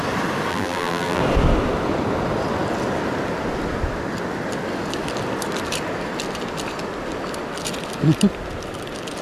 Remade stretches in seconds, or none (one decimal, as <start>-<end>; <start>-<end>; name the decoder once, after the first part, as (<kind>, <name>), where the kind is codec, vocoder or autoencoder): 0.5-1.2 (vocoder, BigVGAN v2)